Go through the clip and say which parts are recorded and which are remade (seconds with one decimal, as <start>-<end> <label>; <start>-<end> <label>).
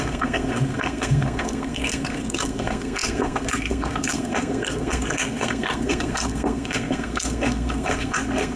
0.0-8.6 remade